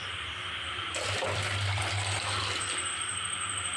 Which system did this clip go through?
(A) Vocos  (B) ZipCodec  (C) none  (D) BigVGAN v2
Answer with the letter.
D